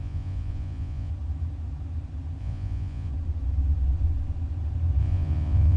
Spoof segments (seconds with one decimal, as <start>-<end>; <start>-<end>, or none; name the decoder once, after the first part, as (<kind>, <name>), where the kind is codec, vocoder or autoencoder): 0.0-1.1 (vocoder, Vocos); 2.4-3.1; 5.0-5.8